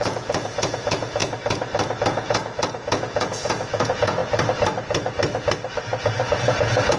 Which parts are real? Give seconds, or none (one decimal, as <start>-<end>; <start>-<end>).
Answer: 1.2-2.0; 4.2-6.2